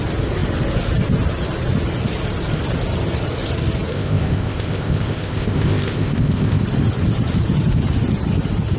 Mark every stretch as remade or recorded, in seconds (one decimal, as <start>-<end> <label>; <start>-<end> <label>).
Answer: 0.0-3.9 recorded; 3.9-6.6 remade; 6.6-8.8 recorded